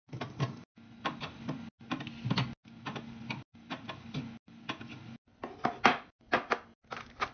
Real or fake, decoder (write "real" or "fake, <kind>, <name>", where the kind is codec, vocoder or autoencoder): real